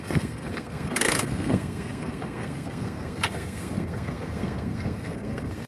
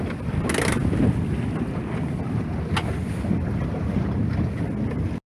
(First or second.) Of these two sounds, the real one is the second